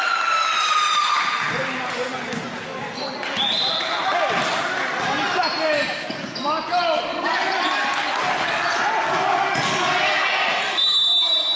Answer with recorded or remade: recorded